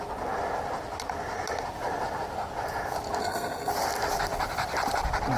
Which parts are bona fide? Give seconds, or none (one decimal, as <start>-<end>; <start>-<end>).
0.0-3.2; 3.7-5.4